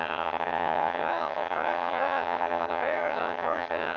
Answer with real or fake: fake